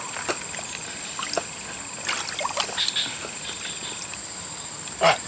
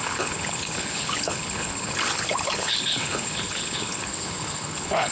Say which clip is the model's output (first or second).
second